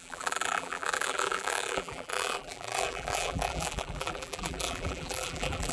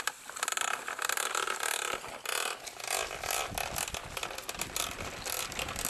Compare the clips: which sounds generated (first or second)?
first